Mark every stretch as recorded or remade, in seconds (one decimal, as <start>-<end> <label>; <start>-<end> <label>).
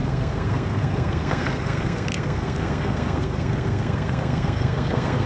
0.0-5.3 remade